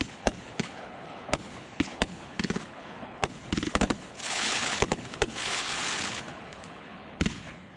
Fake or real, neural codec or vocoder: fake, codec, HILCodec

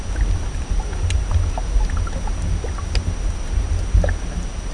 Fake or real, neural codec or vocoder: real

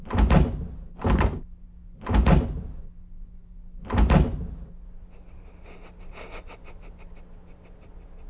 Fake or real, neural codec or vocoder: real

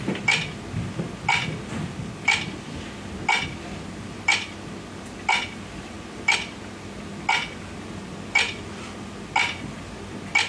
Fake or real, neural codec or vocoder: real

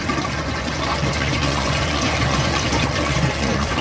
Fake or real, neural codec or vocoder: fake, vocoder, Vocos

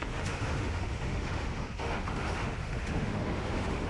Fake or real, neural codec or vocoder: fake, autoencoder, DAC-VAE